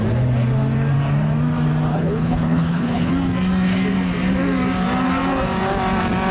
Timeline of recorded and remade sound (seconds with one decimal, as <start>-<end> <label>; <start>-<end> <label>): 0.0-1.9 recorded; 1.9-3.1 remade; 3.1-6.3 recorded